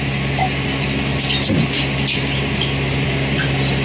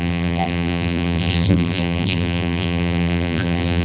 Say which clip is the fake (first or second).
second